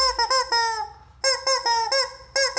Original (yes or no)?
yes